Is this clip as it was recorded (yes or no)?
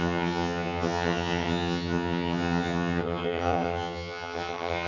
no